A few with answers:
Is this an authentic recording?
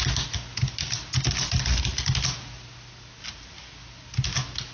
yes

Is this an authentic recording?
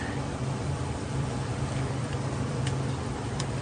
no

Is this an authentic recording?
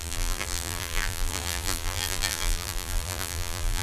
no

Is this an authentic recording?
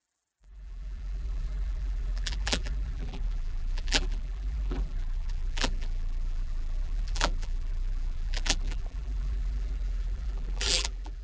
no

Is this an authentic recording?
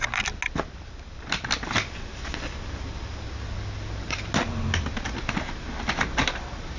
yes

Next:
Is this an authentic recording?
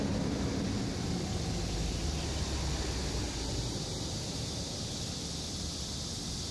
yes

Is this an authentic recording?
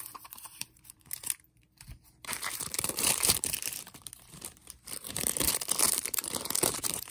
no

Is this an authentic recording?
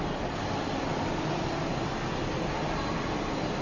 yes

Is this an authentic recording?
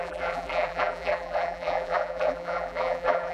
no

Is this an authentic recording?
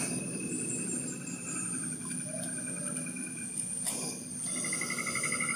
yes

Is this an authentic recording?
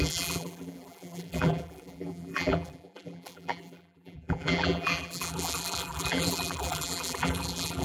no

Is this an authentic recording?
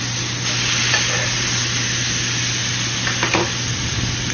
yes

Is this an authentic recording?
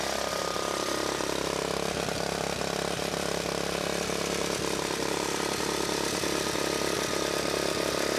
no